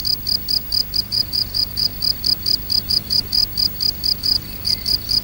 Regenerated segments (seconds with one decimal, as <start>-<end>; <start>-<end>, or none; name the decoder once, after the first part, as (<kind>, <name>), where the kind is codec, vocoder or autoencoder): 1.0-1.9 (vocoder, Vocos); 2.9-3.4; 4.2-5.2